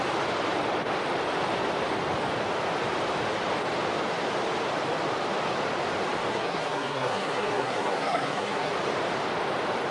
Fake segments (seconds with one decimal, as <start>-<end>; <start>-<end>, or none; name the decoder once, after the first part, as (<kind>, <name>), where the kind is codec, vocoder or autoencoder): 6.3-8.7 (codec, SNAC)